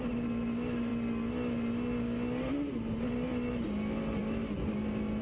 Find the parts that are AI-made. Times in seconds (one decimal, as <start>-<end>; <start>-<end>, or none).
none